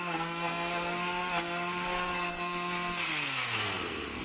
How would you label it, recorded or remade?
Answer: remade